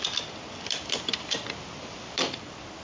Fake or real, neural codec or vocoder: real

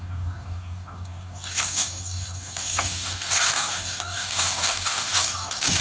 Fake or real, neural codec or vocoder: fake, codec, DAC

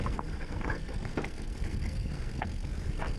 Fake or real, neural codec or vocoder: fake, codec, SNAC